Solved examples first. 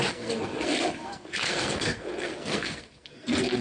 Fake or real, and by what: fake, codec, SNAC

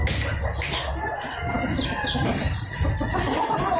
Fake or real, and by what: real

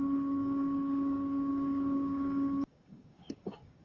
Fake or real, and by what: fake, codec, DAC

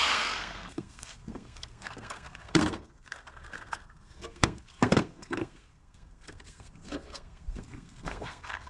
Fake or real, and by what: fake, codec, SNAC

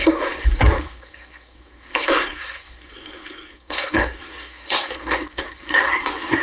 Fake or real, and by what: fake, codec, SNAC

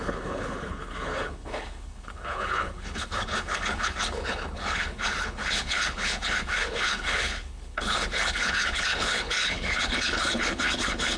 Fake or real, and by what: fake, codec, HILCodec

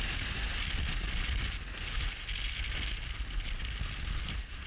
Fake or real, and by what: real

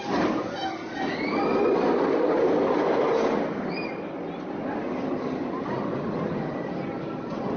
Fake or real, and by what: real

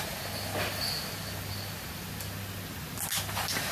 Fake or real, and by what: real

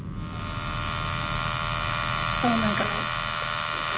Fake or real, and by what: real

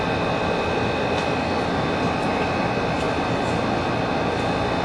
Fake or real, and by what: real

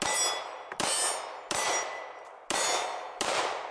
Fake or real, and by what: real